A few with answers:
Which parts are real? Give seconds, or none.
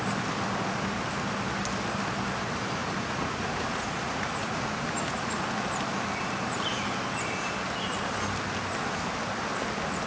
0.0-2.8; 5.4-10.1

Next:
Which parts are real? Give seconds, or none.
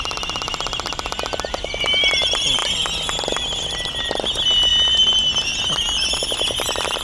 0.0-7.0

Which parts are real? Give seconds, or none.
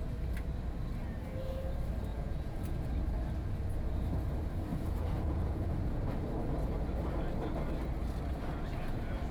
0.0-2.1; 2.9-4.7; 6.0-9.3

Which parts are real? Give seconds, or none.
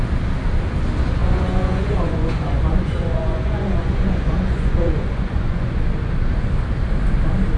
0.0-1.2; 5.8-7.6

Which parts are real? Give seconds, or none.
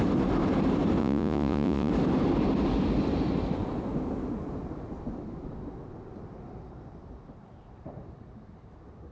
0.0-1.0; 1.9-9.1